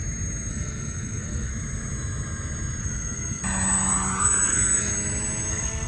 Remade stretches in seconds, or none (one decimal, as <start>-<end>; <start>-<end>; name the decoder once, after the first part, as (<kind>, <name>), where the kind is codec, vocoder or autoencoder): 0.5-1.5 (codec, SNAC); 2.8-3.4; 4.2-4.9; 5.5-5.9

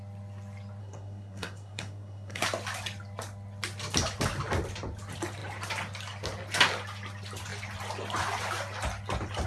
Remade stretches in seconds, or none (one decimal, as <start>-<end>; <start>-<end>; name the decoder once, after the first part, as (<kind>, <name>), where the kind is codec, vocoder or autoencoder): 0.8-2.4 (codec, SNAC)

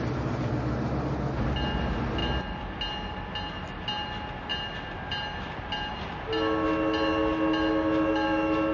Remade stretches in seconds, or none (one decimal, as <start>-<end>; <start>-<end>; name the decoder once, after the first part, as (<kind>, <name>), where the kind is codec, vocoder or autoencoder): none